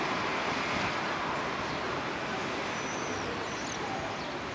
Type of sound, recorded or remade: recorded